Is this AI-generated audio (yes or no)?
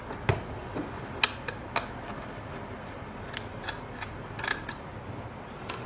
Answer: no